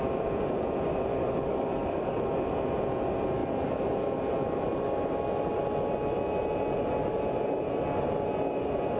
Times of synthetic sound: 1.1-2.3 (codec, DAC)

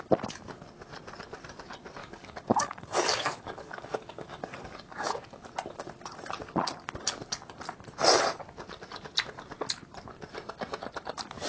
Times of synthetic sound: 2.0-5.1 (codec, DAC)

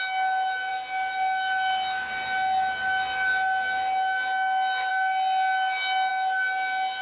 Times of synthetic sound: none

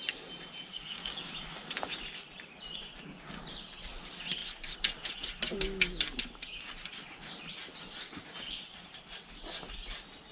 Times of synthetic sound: 0.7-1.3 (codec, DAC)

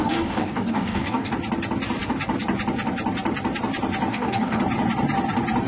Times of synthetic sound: 0.0-1.3 (codec, DAC); 4.1-4.6

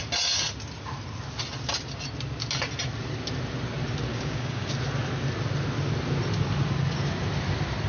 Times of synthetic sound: 4.1-4.7 (codec, DAC)

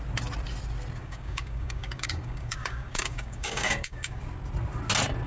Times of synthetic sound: 1.0-4.2 (codec, DAC)